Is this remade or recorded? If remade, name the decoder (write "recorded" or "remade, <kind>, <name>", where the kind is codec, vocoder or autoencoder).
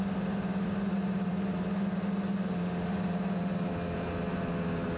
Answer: recorded